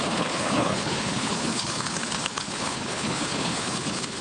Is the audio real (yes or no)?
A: no